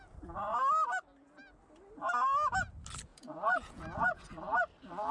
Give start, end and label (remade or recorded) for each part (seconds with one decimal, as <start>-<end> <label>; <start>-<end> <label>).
0.0-3.1 recorded; 3.1-4.3 remade; 4.3-5.1 recorded